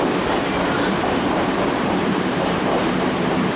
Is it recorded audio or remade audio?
remade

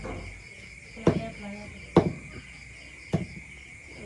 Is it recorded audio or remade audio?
recorded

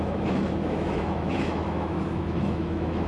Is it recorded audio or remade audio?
remade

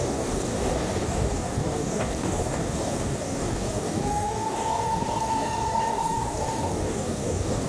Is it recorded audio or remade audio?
remade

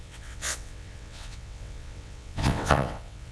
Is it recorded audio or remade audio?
remade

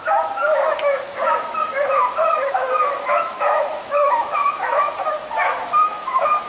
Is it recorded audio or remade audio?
remade